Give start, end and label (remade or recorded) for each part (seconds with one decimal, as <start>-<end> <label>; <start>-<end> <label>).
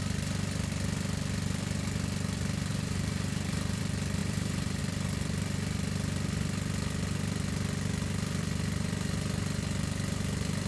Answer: 0.0-2.7 recorded; 2.7-3.8 remade; 3.8-4.2 recorded; 4.2-4.8 remade; 4.8-10.7 recorded